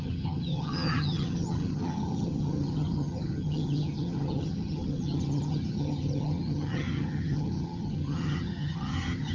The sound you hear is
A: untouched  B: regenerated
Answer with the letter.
B